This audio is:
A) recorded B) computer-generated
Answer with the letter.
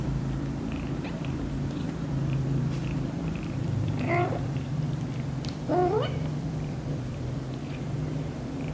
B